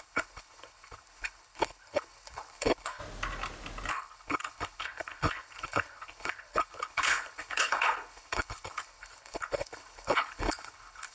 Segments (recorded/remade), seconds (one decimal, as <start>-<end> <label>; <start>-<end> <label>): 0.0-3.0 remade; 3.0-3.9 recorded; 3.9-11.1 remade